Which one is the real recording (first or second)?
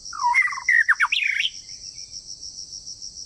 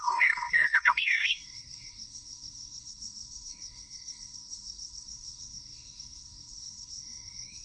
first